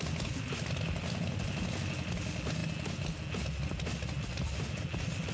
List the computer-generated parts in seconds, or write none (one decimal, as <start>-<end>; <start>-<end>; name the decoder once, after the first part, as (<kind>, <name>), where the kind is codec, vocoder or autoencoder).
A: none